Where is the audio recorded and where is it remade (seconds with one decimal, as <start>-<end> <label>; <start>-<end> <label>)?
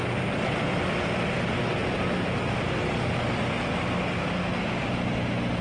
0.0-5.6 recorded